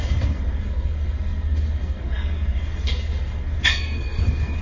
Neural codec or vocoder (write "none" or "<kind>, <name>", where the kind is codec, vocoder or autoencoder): codec, SNAC